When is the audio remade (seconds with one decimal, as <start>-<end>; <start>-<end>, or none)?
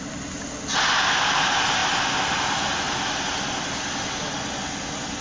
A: none